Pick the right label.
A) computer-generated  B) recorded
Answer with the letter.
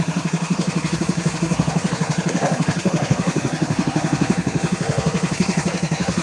A